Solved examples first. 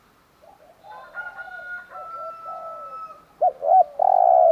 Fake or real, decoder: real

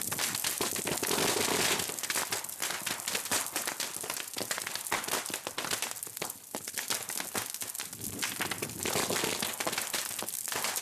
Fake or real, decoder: real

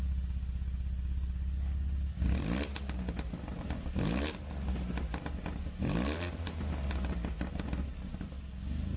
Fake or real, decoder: real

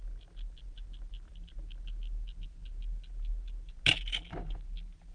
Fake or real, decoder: real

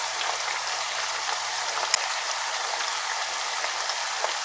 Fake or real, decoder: real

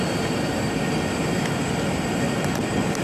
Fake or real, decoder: real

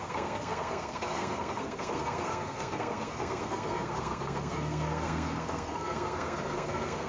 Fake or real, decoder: fake, codec, SNAC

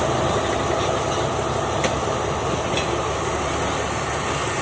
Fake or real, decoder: real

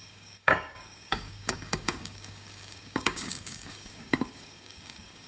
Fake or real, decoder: fake, codec, DAC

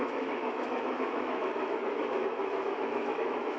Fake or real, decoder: fake, autoencoder, DAC-VAE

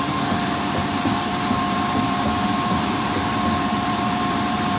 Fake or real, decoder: fake, vocoder, BigVGAN v2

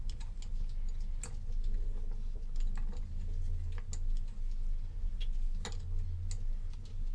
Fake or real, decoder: real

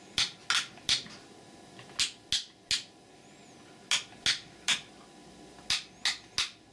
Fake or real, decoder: real